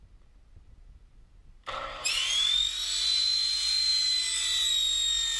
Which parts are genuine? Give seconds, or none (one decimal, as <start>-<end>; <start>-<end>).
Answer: 0.0-1.4; 2.1-5.4